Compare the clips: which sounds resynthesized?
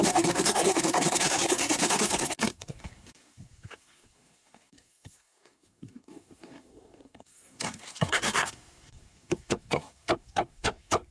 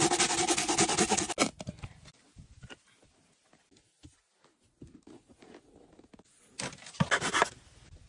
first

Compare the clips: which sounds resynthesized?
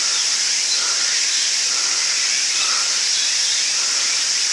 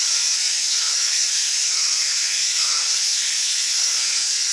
second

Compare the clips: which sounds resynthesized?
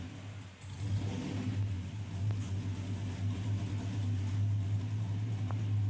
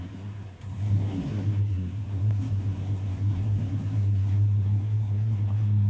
second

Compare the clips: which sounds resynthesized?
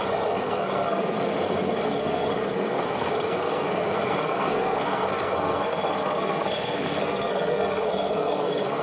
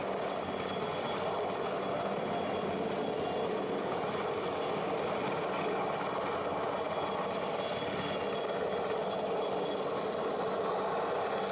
first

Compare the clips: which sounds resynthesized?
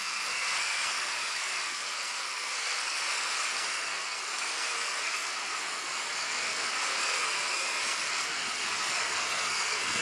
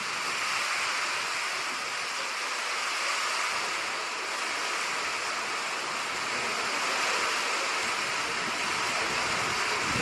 first